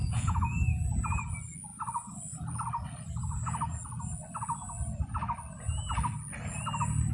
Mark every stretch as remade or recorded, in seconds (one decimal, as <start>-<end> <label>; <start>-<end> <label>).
0.0-1.2 remade; 1.2-7.1 recorded